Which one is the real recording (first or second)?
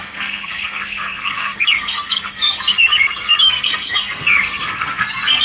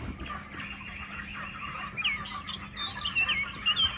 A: second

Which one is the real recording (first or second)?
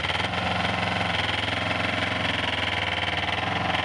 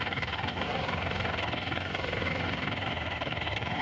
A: first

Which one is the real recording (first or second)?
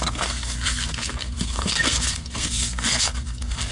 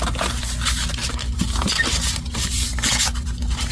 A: second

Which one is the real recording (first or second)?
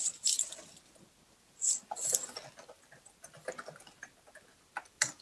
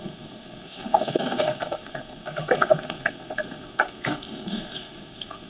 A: first